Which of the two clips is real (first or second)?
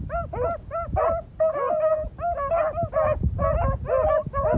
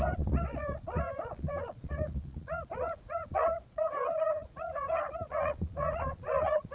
first